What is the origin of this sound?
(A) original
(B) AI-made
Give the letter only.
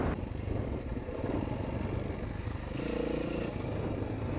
A